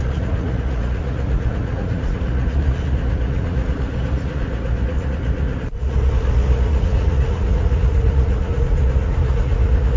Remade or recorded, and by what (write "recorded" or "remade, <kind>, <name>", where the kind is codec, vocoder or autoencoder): remade, vocoder, Vocos